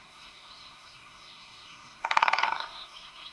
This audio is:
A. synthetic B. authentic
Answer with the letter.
A